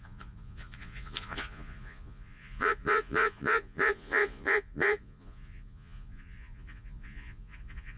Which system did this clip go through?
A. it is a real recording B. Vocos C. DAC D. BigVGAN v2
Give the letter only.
B